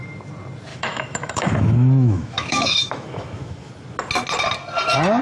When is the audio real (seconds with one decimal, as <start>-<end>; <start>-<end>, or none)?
0.0-0.7; 3.7-5.2